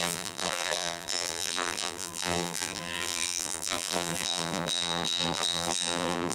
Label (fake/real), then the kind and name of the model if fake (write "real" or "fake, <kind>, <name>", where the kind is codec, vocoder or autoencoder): fake, vocoder, BigVGAN v2